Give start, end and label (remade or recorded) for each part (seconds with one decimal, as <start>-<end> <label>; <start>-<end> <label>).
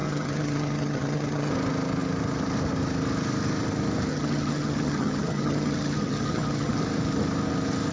0.0-1.5 remade; 1.5-4.1 recorded; 4.1-6.8 remade; 6.8-7.9 recorded